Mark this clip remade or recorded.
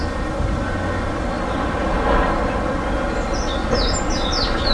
recorded